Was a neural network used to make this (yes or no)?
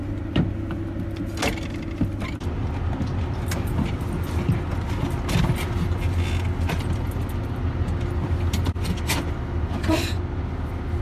no